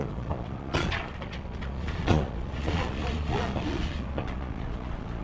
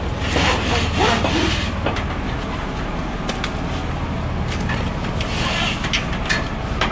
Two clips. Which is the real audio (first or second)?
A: second